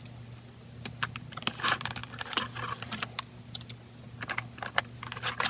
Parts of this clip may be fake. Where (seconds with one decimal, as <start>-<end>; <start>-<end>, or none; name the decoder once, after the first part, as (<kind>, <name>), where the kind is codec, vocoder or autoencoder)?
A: none